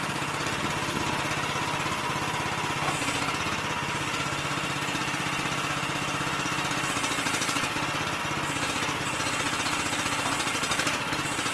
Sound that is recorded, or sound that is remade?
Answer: recorded